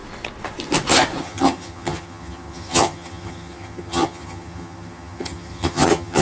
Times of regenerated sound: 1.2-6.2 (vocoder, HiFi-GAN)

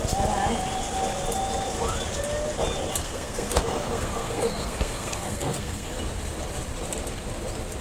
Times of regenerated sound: 3.0-6.0 (codec, SNAC)

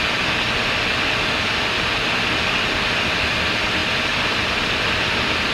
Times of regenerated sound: none

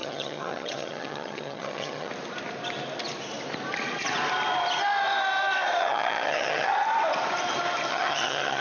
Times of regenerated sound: 0.0-2.1 (vocoder, HiFi-GAN); 5.8-6.7; 7.9-8.6

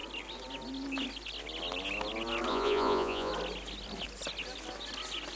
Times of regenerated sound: 2.5-3.3 (vocoder, Vocos)